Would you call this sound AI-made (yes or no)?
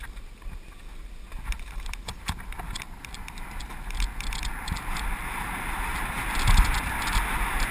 no